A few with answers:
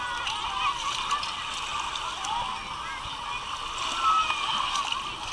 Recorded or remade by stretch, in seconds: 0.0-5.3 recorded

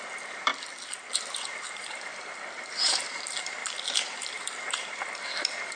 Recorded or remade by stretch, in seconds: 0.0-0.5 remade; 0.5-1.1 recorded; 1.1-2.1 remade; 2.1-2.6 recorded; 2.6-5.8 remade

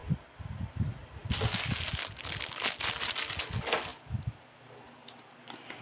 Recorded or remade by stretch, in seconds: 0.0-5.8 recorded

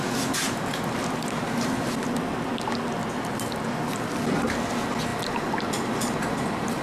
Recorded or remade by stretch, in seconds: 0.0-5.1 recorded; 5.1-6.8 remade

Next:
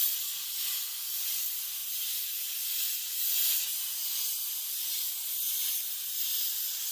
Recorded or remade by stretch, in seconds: 0.0-6.9 recorded

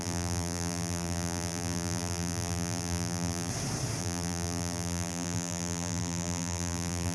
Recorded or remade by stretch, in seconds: 0.0-3.5 remade; 3.5-4.0 recorded; 4.0-7.1 remade